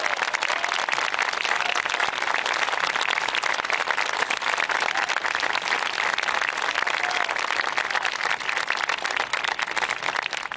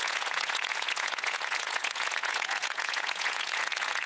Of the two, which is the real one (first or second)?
first